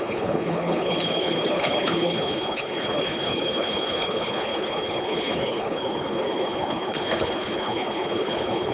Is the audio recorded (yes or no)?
no